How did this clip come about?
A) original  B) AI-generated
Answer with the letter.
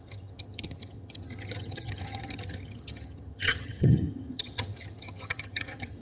B